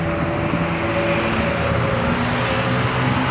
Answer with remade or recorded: recorded